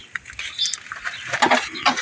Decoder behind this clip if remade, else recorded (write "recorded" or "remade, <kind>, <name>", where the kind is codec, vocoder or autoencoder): recorded